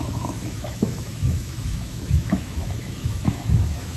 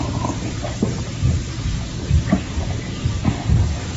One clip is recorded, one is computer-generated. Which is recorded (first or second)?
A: second